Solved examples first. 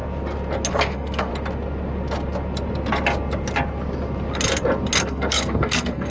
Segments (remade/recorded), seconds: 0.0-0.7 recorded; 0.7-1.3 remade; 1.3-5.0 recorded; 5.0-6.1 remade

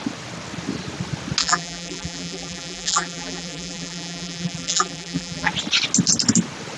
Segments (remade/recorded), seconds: 0.0-1.4 recorded; 1.4-5.5 remade; 5.5-6.8 recorded

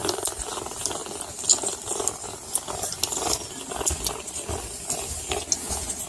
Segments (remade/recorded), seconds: 0.0-6.1 recorded

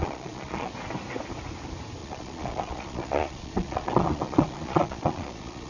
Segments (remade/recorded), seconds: 0.0-0.7 remade; 0.7-2.0 recorded; 2.0-5.7 remade

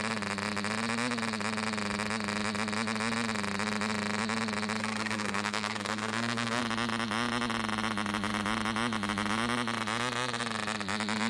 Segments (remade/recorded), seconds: 0.0-4.8 recorded; 4.8-6.6 remade; 6.6-11.3 recorded

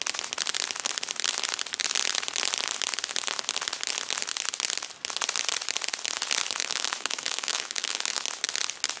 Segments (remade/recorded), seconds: 0.0-6.6 recorded; 6.6-8.2 remade; 8.2-9.0 recorded

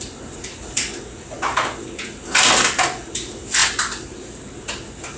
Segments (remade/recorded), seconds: 0.0-5.2 recorded

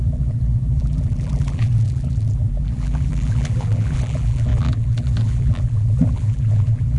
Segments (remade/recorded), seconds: 0.0-7.0 remade